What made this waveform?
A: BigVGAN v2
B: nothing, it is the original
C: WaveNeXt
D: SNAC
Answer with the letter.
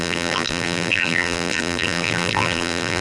A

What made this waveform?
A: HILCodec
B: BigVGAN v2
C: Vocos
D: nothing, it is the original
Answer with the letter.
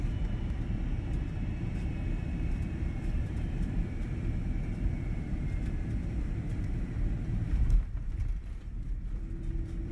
B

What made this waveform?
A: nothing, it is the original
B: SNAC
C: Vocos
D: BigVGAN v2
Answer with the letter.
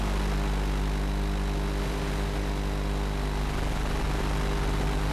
A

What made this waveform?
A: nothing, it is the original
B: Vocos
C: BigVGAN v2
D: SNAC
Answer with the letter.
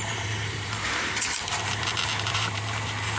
C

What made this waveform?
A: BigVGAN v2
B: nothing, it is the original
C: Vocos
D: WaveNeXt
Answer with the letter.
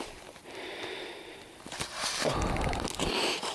B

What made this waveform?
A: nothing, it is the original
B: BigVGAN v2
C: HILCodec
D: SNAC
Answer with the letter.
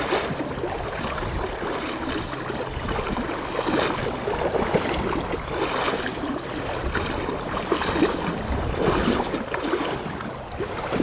A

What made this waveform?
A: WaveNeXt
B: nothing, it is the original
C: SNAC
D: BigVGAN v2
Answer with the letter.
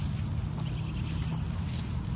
B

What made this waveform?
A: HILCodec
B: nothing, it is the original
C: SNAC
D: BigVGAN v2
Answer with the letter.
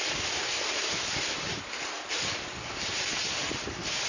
D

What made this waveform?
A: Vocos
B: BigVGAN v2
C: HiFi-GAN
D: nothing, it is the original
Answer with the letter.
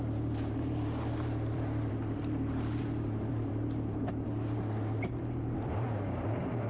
B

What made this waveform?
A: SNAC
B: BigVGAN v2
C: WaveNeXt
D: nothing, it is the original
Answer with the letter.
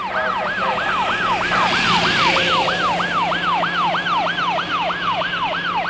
B